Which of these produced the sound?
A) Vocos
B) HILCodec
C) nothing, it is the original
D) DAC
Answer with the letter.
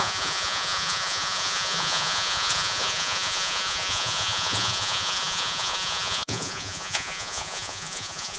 A